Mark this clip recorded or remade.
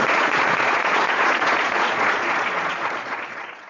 remade